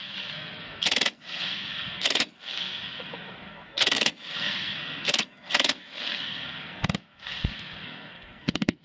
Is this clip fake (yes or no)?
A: yes